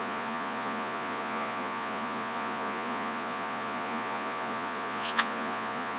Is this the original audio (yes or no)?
no